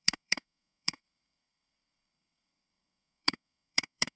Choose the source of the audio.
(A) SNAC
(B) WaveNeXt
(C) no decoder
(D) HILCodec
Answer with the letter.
A